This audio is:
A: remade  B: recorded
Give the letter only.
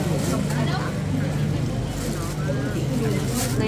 B